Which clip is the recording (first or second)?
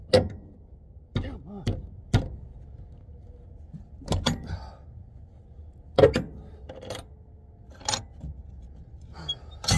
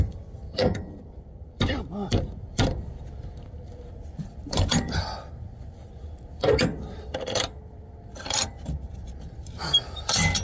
first